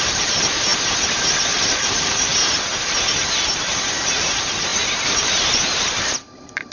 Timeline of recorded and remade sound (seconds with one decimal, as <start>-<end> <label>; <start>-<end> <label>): 0.0-0.7 remade; 0.7-1.5 recorded; 1.5-2.3 remade; 2.3-4.1 recorded; 4.1-6.7 remade